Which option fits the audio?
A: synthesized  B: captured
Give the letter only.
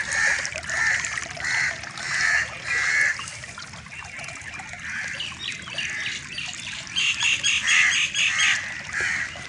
B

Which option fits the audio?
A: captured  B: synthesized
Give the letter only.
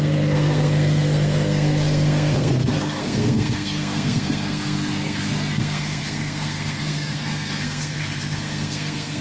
B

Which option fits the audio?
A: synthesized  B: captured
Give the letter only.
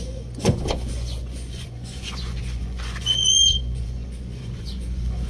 A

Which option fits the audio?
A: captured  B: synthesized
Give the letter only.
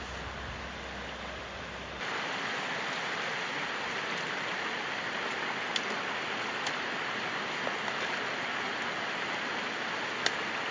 A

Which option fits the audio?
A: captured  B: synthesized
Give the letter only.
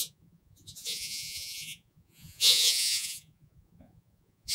B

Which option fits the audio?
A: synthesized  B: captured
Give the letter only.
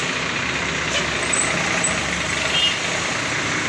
B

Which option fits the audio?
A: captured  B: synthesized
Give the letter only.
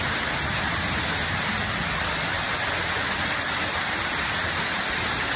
A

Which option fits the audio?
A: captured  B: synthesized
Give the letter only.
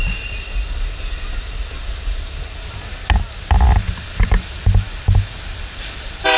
A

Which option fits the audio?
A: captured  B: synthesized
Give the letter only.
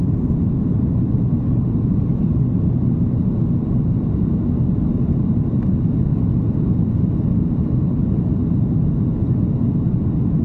A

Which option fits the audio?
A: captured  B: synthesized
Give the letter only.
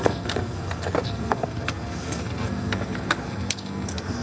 B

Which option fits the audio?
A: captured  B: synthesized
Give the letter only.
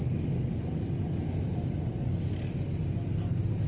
A